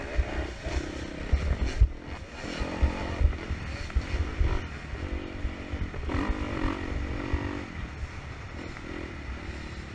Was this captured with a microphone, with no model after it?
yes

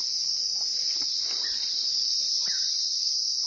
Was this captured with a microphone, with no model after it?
no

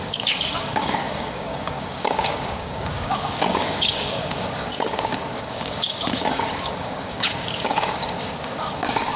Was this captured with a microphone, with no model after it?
no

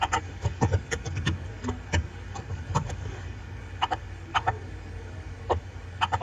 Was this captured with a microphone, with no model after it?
no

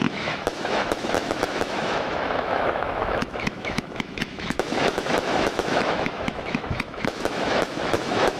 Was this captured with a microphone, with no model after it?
no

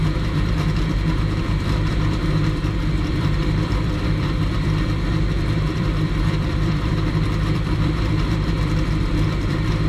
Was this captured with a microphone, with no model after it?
no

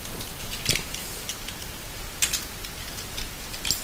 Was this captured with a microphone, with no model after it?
yes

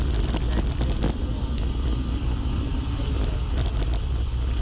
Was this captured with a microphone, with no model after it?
yes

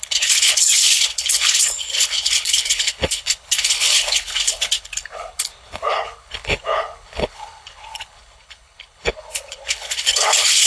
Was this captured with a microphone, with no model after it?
no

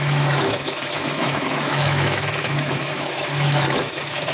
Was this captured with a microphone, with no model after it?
no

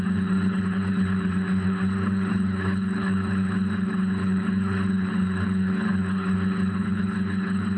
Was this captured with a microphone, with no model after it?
no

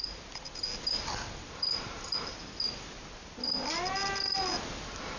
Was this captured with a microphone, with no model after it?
yes